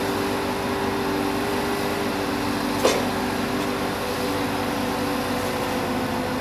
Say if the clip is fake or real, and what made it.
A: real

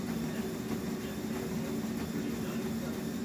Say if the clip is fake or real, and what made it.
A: real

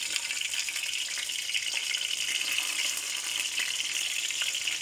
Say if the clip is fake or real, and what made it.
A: real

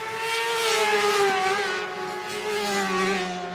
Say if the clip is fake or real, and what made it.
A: real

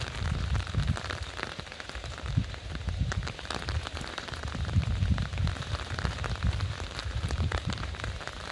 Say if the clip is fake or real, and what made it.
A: fake, vocoder, BigVGAN v2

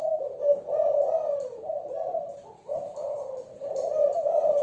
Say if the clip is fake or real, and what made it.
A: fake, vocoder, BigVGAN v2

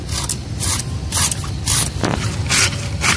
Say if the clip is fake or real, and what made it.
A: real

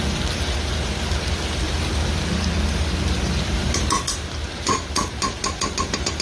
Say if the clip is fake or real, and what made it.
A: fake, vocoder, BigVGAN v2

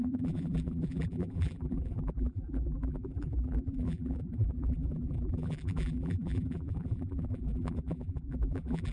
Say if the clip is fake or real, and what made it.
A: fake, vocoder, BigVGAN v2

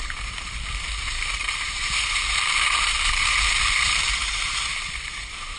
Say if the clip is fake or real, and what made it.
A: fake, vocoder, BigVGAN v2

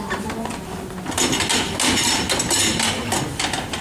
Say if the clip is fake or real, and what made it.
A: real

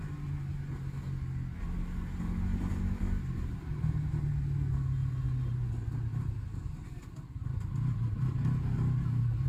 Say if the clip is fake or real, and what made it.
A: real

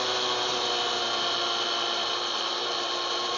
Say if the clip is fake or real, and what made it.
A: real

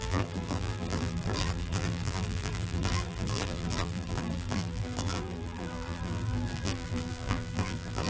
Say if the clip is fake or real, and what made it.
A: fake, vocoder, BigVGAN v2